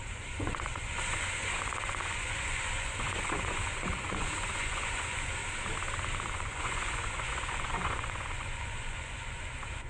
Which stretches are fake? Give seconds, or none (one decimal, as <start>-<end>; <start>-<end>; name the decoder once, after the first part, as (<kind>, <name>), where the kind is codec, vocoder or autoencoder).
0.0-5.4 (vocoder, Vocos); 6.3-9.9